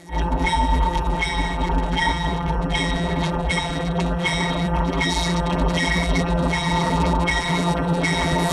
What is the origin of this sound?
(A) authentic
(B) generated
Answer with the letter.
B